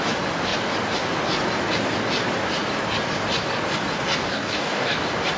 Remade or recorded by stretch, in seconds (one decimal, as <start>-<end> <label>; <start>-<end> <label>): 0.0-4.2 recorded; 4.2-5.0 remade; 5.0-5.4 recorded